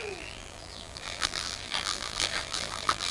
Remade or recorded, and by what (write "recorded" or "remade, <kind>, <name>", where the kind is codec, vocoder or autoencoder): remade, vocoder, BigVGAN v2